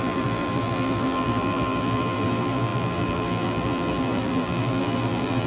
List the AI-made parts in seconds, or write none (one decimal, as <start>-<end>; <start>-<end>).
0.0-5.5